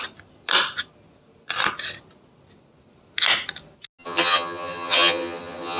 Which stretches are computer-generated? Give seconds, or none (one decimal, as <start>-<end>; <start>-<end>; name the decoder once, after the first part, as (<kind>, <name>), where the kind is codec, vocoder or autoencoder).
4.0-5.8 (vocoder, HiFi-GAN)